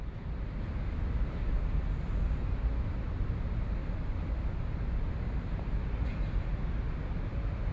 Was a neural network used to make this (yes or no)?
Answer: no